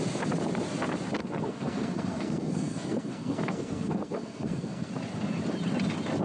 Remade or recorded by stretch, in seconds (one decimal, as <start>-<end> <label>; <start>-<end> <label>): 0.0-1.2 recorded; 1.2-4.9 remade; 4.9-6.2 recorded

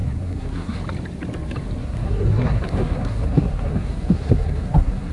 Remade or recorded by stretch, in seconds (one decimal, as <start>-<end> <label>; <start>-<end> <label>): 0.0-0.8 remade; 0.8-1.8 recorded; 1.8-5.1 remade

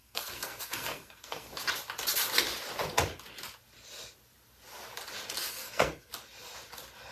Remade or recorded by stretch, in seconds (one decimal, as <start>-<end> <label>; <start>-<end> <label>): 0.0-1.5 remade; 1.5-5.5 recorded; 5.5-6.1 remade; 6.1-7.1 recorded

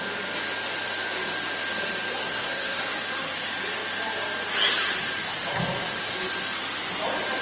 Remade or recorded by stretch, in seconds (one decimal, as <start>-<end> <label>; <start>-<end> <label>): 0.0-2.2 recorded; 2.2-2.8 remade; 2.8-7.4 recorded

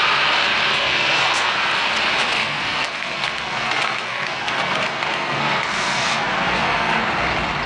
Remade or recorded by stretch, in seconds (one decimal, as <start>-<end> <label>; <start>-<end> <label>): 0.0-0.7 recorded; 0.7-1.7 remade; 1.7-2.4 recorded; 2.4-7.0 remade; 7.0-7.7 recorded

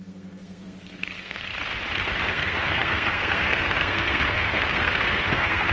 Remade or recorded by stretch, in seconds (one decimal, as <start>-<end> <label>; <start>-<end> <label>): 0.0-1.5 remade; 1.5-2.3 recorded; 2.3-5.7 remade